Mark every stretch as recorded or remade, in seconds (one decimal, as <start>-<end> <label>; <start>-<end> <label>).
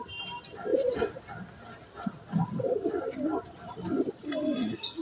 0.0-5.0 recorded